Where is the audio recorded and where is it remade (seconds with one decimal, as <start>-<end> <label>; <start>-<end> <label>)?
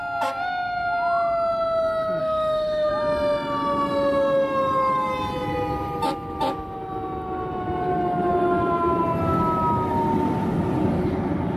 0.0-2.2 recorded; 2.2-2.9 remade; 2.9-11.6 recorded